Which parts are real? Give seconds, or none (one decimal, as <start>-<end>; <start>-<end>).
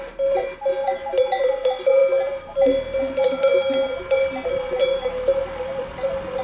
0.0-4.8; 5.4-6.4